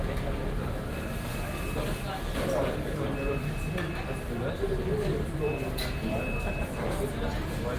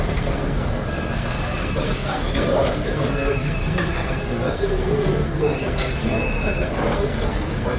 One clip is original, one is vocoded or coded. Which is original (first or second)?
first